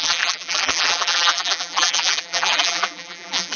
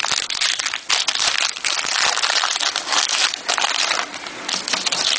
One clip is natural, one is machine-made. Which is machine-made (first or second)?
first